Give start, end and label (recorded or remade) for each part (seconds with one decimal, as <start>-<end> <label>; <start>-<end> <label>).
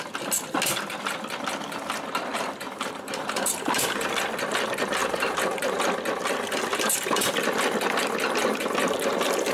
0.0-2.3 recorded; 2.3-4.1 remade; 4.1-5.0 recorded; 5.0-5.8 remade; 5.8-9.5 recorded